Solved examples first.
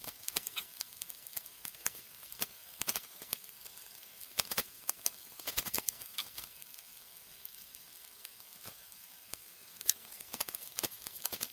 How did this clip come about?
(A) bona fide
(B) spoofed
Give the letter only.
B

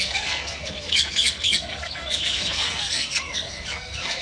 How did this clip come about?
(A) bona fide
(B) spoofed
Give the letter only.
B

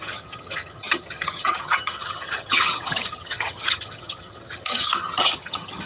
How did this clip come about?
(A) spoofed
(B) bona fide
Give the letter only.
A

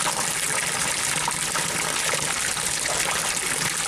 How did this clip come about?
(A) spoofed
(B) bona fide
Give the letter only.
B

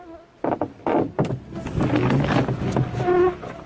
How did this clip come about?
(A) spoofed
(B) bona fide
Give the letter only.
B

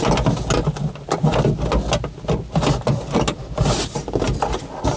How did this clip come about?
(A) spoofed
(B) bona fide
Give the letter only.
B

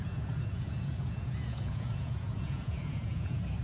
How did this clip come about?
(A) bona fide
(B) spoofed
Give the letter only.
B